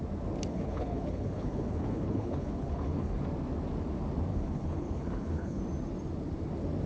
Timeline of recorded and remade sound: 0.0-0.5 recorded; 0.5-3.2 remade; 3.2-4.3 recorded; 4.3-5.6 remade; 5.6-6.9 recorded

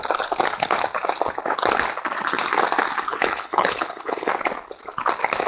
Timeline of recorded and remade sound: 0.0-3.1 recorded; 3.1-4.3 remade; 4.3-5.5 recorded